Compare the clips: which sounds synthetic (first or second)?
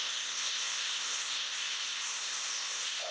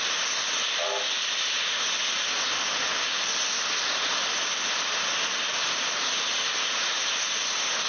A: first